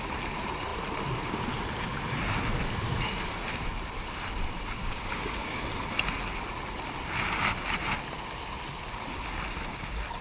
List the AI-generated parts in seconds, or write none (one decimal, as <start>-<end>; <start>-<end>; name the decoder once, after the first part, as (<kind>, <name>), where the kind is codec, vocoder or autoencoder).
4.8-5.6 (codec, DAC)